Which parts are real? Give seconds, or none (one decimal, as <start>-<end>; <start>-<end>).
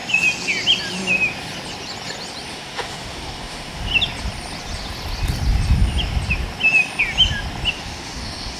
0.0-2.5; 3.9-7.7